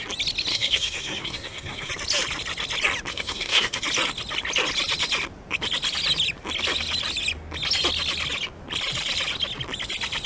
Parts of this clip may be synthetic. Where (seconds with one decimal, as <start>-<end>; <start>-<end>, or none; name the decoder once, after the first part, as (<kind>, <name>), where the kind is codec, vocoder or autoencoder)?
0.5-1.9 (codec, SNAC); 3.1-3.8

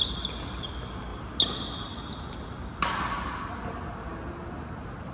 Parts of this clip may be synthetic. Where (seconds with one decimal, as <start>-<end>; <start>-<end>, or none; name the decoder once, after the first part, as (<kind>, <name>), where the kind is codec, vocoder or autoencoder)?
none